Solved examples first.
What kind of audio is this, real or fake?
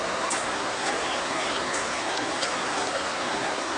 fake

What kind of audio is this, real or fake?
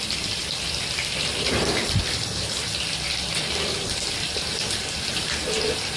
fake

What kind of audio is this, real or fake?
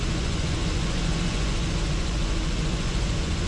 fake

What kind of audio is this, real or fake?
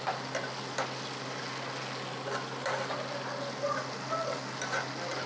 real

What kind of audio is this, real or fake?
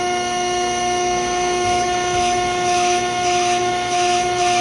fake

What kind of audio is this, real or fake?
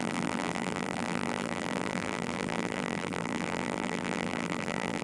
fake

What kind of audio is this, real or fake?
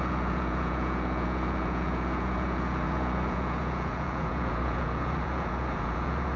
fake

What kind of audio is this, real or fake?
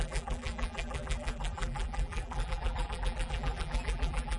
fake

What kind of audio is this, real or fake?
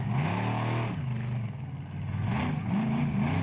real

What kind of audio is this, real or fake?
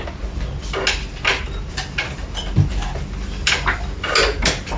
real